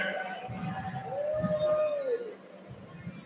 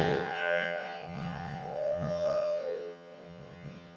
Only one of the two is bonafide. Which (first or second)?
first